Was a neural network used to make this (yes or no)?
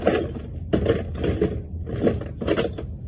no